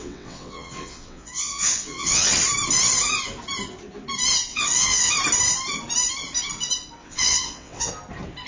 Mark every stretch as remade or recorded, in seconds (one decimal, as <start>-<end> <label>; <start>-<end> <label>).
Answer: 0.0-2.3 remade; 2.3-4.5 recorded; 4.5-5.1 remade; 5.1-7.0 recorded; 7.0-7.9 remade; 7.9-8.5 recorded